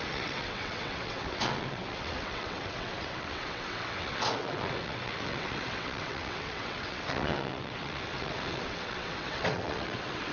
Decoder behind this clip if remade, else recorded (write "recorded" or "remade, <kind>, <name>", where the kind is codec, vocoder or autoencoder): remade, vocoder, WaveNeXt